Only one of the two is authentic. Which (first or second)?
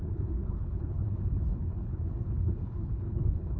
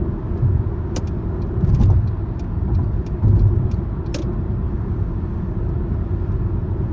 second